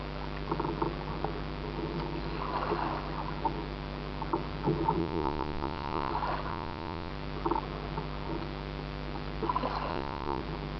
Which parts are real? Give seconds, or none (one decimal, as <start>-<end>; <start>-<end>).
0.0-5.0; 6.1-6.5; 7.1-9.9; 10.4-10.8